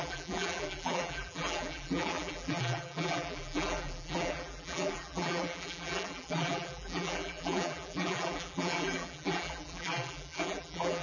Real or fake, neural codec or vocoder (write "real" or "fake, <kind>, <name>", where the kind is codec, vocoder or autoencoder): fake, vocoder, BigVGAN v2